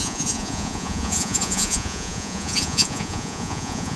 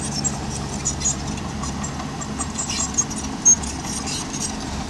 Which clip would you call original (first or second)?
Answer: second